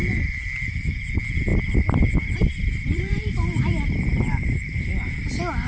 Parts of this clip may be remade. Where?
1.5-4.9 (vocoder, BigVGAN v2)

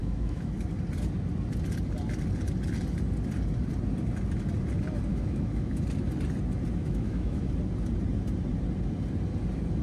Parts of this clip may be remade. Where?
0.0-0.5 (autoencoder, DAC-VAE); 5.1-5.8; 6.8-7.5

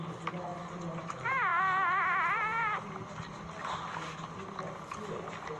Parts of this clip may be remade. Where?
none